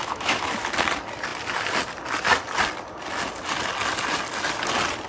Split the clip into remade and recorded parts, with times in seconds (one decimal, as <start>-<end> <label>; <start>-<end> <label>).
0.0-0.6 remade; 0.6-5.1 recorded